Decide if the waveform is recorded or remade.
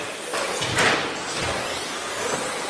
recorded